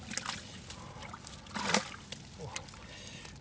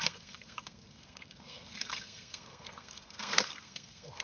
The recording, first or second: first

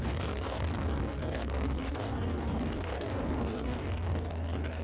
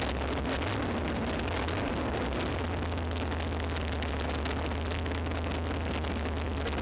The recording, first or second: second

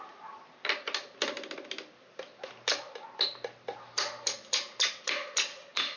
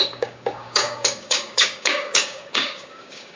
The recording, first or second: first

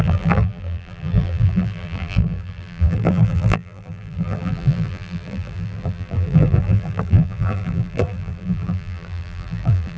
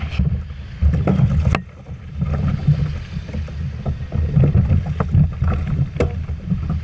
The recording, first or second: second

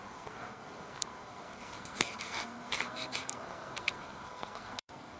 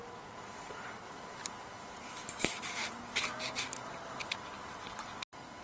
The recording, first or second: second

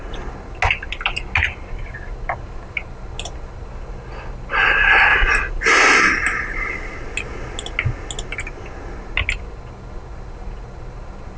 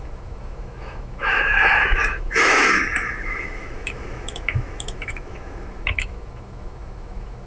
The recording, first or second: first